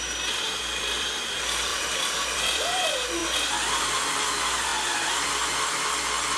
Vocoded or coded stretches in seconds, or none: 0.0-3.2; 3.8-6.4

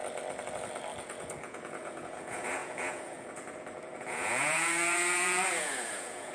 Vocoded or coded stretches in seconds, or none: 1.0-6.3